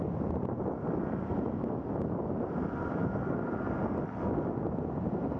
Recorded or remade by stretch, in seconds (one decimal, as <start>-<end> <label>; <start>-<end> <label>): 0.0-5.4 recorded